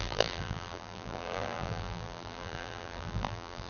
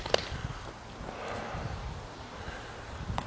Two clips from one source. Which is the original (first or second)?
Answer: second